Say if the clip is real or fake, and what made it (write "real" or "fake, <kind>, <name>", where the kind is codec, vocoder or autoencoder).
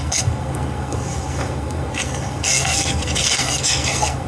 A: fake, codec, SNAC